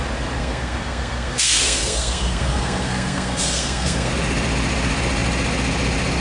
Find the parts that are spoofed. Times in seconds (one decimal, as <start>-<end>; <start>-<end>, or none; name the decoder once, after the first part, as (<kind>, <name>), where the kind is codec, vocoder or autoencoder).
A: 0.4-4.1 (codec, SNAC)